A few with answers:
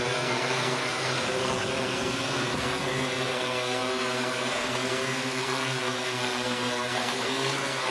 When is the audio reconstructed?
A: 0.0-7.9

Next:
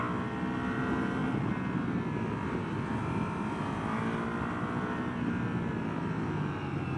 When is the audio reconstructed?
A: none

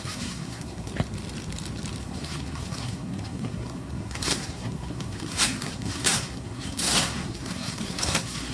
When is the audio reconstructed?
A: 0.0-0.9; 2.0-8.5

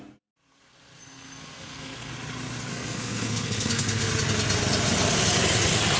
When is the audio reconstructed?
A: 1.0-2.1; 2.7-4.1

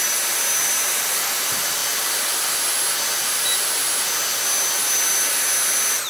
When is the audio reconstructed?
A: none

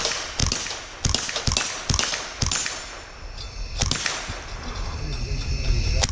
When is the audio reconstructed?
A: none